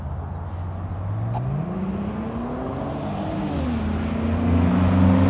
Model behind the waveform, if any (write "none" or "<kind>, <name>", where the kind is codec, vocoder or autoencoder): none